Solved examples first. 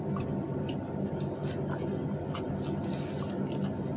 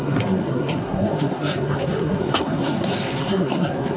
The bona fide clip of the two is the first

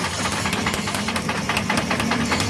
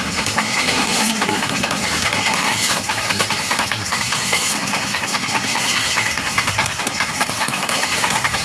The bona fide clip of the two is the first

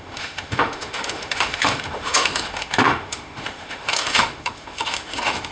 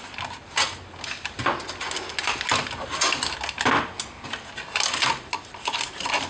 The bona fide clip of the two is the second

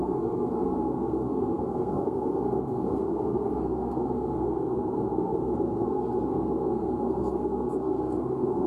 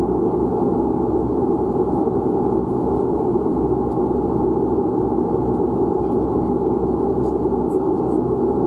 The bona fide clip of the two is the second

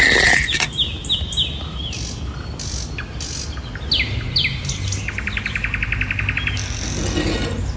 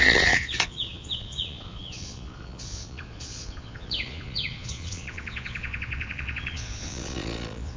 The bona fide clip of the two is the first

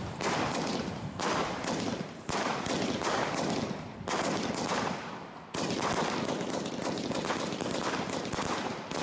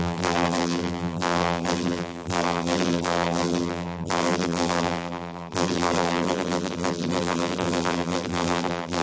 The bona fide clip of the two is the first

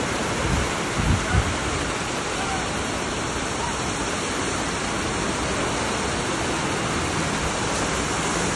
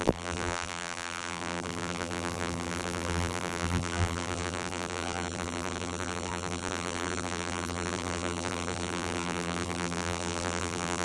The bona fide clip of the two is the first